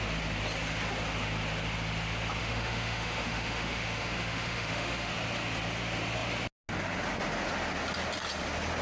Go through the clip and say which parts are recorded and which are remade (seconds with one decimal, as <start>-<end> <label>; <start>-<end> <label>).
0.0-2.4 recorded; 2.4-5.1 remade; 5.1-8.8 recorded